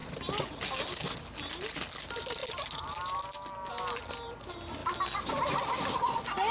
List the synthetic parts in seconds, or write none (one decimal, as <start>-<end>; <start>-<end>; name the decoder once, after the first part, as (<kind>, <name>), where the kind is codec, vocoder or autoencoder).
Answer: none